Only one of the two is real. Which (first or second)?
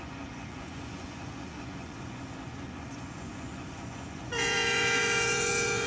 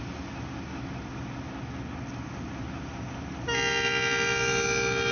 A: second